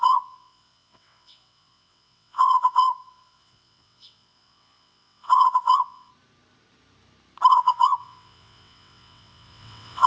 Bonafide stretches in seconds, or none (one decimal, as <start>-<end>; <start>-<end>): 6.1-7.5

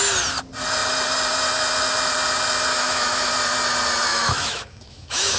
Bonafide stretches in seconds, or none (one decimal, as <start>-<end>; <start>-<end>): 0.0-2.7; 3.3-4.1

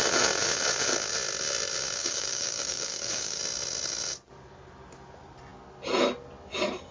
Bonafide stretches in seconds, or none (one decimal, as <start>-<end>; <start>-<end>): 0.0-2.0; 3.4-6.9

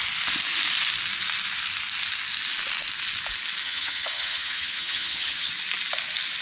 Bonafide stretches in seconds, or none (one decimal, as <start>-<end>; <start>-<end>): 0.0-3.6; 5.5-6.4

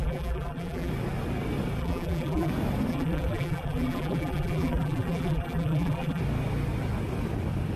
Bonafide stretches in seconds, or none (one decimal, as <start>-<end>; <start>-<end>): 0.9-1.8; 2.5-2.9; 6.2-7.8